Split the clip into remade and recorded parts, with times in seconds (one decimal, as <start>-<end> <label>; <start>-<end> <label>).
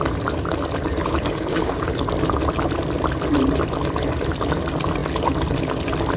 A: 0.0-1.0 recorded; 1.0-1.9 remade; 1.9-6.2 recorded